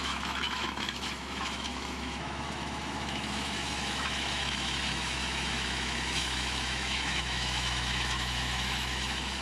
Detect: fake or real fake